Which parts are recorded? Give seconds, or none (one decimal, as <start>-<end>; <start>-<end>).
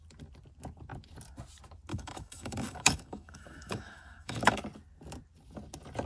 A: 0.0-1.9; 4.6-6.1